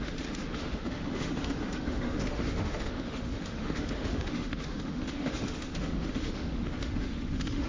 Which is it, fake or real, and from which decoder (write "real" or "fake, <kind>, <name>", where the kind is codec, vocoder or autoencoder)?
fake, autoencoder, DAC-VAE